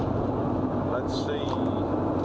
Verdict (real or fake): real